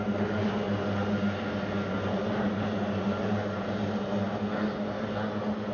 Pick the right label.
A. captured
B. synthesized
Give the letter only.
A